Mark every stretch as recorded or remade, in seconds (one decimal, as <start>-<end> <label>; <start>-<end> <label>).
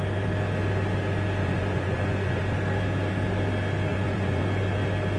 0.0-1.4 recorded; 1.4-2.4 remade; 2.4-3.9 recorded; 3.9-4.4 remade; 4.4-5.2 recorded